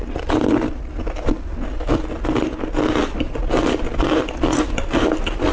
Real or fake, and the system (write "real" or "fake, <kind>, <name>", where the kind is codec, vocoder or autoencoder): real